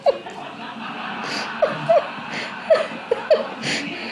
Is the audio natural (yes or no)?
yes